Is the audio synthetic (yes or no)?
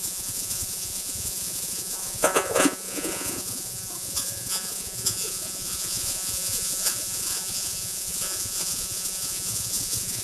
yes